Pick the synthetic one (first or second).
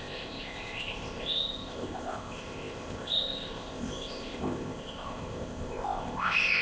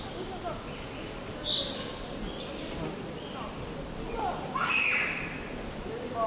first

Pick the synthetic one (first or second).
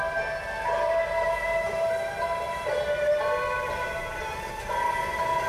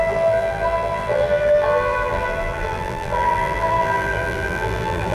second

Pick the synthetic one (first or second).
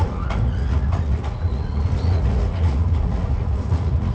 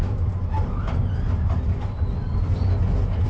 first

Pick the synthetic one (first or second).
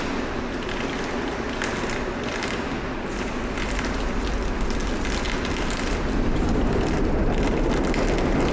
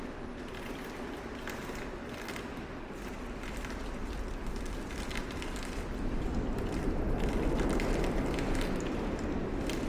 second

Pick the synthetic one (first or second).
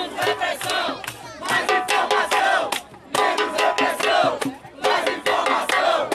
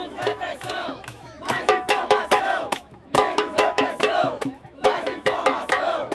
second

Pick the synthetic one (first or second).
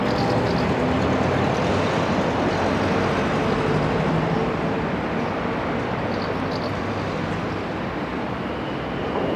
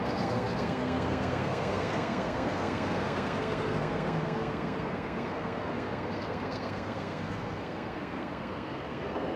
second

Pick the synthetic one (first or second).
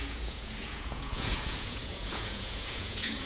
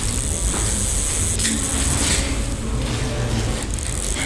first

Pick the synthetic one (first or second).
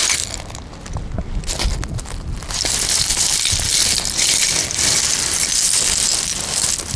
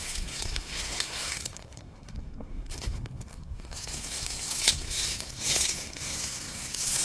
second